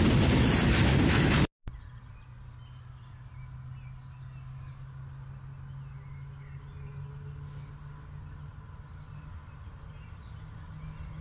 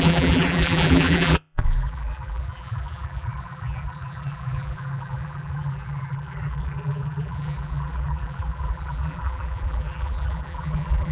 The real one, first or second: first